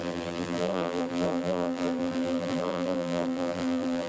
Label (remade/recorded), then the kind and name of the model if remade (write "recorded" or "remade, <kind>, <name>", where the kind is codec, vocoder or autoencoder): remade, vocoder, BigVGAN v2